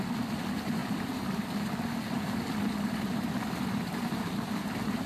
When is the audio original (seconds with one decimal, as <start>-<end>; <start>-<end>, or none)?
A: 0.0-0.8; 1.6-5.1